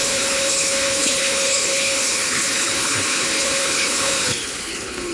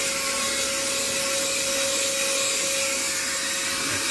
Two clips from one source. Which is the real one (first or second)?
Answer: second